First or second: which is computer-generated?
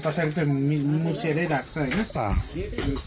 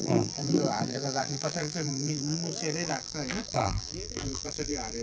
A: second